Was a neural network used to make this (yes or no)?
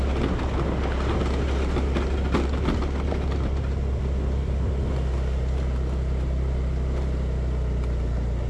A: no